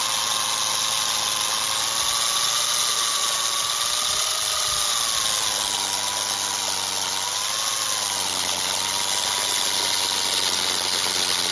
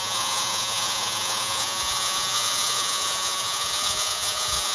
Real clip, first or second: first